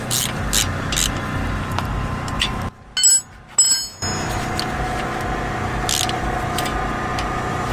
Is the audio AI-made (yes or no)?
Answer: no